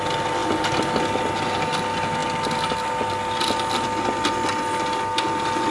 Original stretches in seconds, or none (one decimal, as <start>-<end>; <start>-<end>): 0.0-5.7